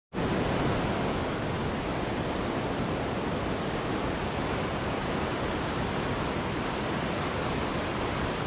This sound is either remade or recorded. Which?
recorded